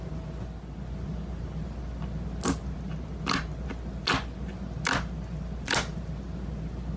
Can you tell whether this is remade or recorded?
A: recorded